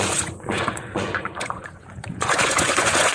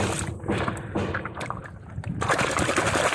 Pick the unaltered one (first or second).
second